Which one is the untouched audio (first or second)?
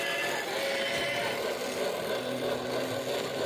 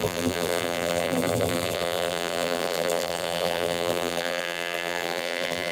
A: first